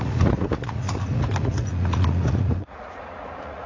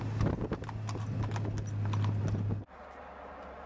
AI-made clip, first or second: first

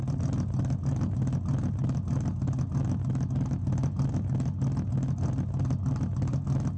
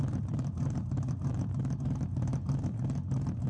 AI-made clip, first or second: second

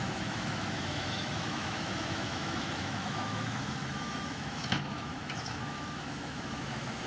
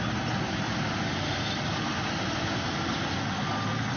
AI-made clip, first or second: first